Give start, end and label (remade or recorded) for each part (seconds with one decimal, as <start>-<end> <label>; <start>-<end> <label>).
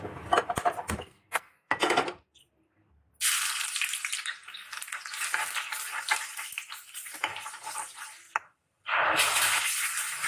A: 0.0-1.0 recorded; 1.0-1.7 remade; 1.7-10.3 recorded